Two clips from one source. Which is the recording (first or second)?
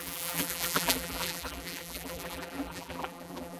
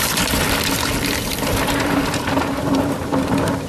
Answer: second